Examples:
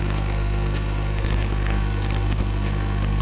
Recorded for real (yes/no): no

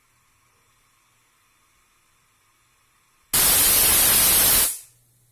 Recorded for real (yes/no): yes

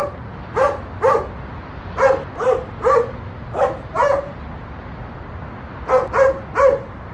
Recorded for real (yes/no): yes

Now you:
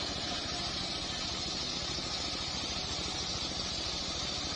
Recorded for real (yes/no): yes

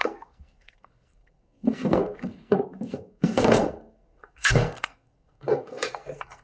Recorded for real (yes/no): no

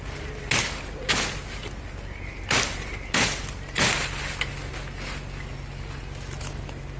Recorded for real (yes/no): yes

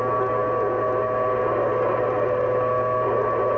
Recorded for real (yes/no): yes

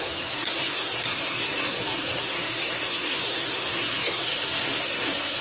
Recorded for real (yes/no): no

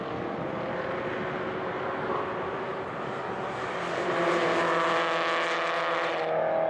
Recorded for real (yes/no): yes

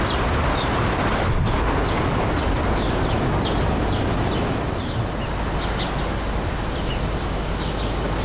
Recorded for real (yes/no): yes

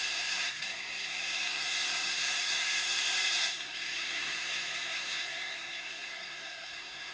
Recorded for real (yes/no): no